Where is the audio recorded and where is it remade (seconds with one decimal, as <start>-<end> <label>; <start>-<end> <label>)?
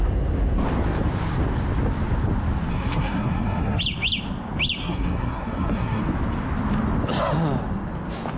0.0-2.7 recorded; 2.7-3.8 remade; 3.8-4.8 recorded; 4.8-6.0 remade; 6.0-8.4 recorded